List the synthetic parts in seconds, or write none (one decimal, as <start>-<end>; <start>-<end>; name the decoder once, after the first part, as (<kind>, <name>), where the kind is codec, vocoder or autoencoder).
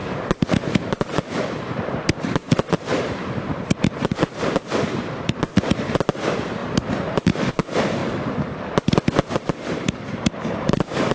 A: 0.0-8.0 (vocoder, BigVGAN v2); 9.3-11.1